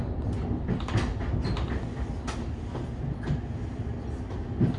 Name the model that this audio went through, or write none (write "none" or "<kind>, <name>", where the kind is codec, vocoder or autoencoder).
none